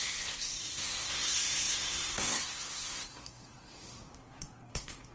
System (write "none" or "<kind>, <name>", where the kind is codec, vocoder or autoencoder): codec, SNAC